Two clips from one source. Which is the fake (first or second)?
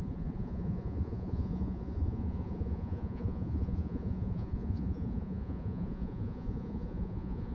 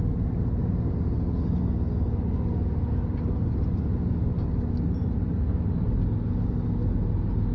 first